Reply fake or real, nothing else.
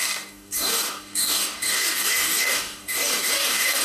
fake